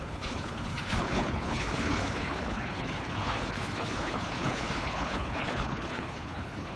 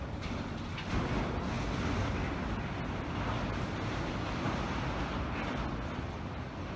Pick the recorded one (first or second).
second